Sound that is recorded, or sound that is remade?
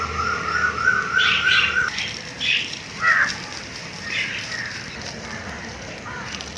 remade